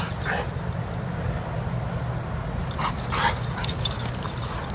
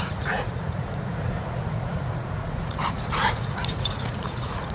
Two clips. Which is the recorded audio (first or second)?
first